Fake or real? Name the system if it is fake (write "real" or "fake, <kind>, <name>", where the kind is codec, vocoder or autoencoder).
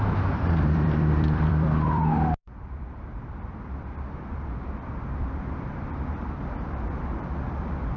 fake, vocoder, BigVGAN v2